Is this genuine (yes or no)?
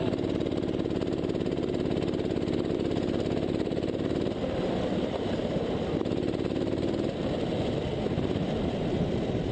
yes